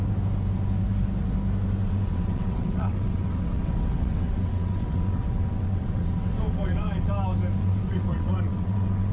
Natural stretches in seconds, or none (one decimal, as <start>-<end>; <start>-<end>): 0.0-1.8; 7.1-7.6